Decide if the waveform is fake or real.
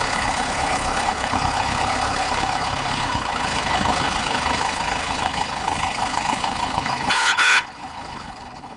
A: fake